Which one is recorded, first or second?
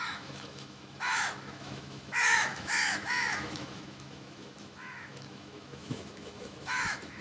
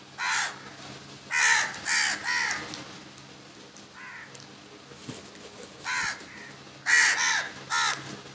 second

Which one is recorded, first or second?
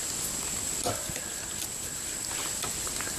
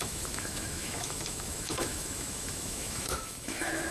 first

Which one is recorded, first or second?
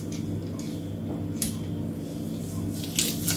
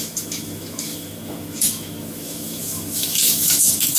first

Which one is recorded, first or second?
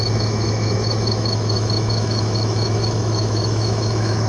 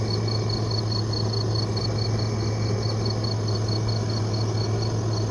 second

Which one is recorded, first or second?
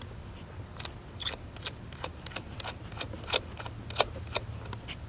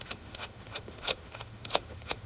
first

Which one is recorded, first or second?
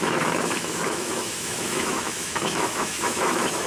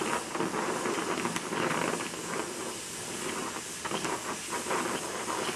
second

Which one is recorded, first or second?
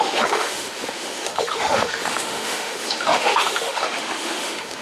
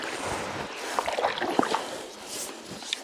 second